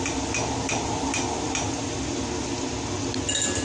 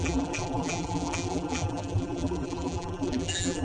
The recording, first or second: first